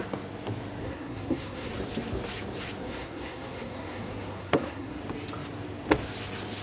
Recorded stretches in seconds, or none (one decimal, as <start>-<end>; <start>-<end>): 0.0-0.8; 1.7-2.8; 5.0-6.6